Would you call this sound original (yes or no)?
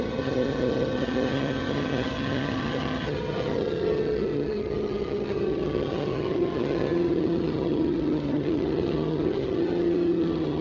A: no